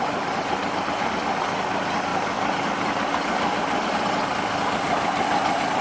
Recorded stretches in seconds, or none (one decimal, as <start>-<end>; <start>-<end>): 0.0-5.8